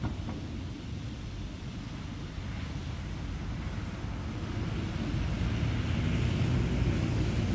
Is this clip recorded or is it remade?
recorded